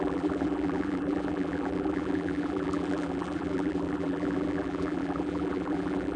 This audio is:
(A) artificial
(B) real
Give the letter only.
A